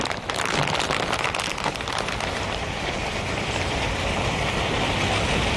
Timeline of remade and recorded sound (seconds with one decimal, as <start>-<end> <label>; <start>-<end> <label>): 0.0-1.5 recorded; 1.5-4.9 remade; 4.9-5.6 recorded